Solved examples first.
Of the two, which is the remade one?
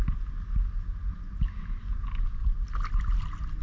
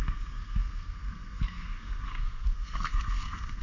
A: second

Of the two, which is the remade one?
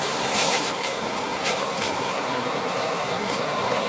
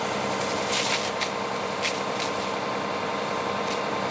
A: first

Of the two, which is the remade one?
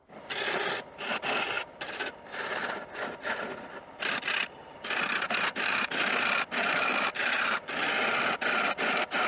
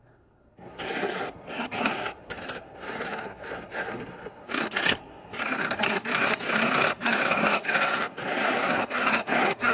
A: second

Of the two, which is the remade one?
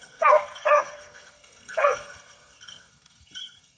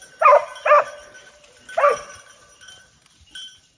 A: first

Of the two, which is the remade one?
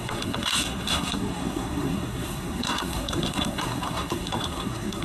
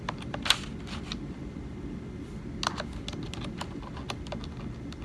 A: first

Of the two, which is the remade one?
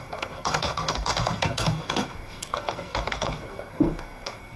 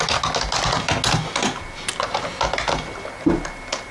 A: first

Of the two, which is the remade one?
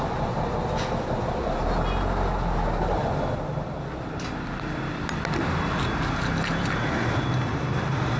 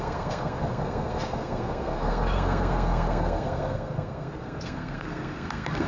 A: second